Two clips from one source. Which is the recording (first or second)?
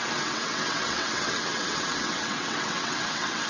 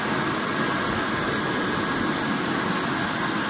second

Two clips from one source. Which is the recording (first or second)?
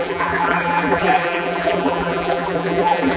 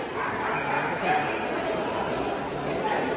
second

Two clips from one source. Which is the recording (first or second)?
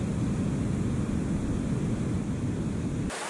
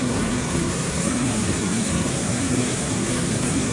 first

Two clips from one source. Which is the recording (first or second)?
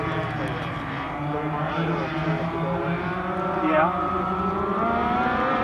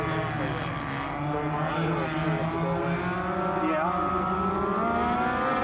second